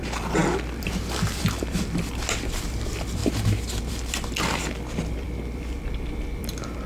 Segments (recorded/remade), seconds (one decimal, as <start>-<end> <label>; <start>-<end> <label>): 0.0-3.2 remade; 3.2-3.8 recorded; 3.8-6.9 remade